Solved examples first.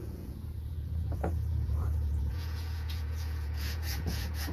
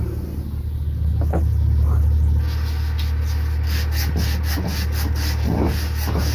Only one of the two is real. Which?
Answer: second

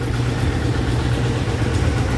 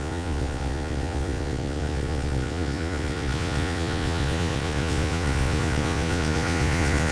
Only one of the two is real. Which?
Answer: first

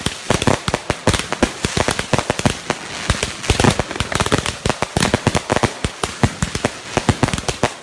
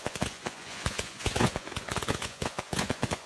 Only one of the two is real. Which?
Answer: first